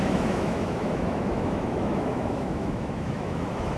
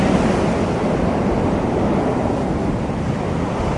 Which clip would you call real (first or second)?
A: second